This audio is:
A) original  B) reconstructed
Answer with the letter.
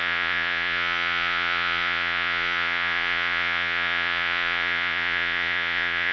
B